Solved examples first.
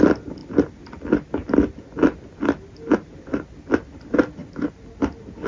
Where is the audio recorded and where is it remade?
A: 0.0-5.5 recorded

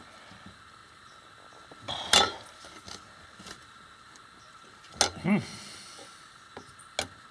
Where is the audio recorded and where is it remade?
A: 0.0-7.3 recorded

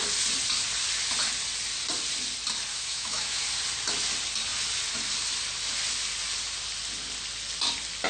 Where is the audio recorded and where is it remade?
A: 0.0-2.7 recorded; 2.7-3.4 remade; 3.4-8.1 recorded

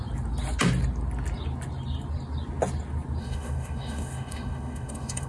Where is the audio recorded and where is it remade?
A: 0.0-3.2 recorded; 3.2-5.3 remade

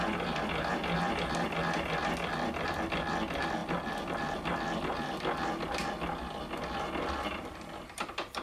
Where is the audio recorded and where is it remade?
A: 0.0-8.4 recorded